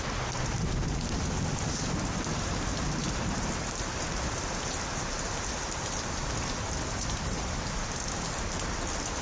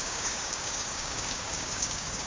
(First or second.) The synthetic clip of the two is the second